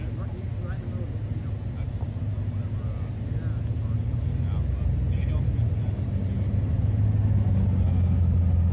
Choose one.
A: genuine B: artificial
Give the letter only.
A